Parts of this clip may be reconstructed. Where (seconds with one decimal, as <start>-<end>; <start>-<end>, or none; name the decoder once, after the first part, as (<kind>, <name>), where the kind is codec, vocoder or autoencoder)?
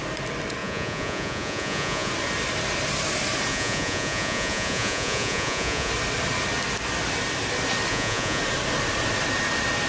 0.6-2.1 (vocoder, Vocos); 3.5-5.9; 7.9-8.4